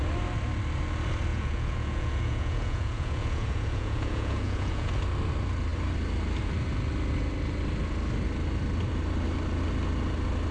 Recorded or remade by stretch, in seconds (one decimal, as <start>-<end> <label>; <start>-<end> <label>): 0.0-1.3 recorded; 1.3-4.9 remade; 4.9-10.5 recorded